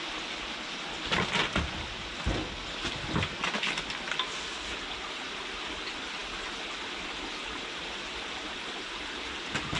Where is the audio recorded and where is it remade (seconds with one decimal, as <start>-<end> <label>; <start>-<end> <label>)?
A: 0.0-9.8 recorded